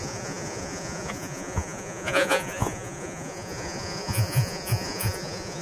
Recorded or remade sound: remade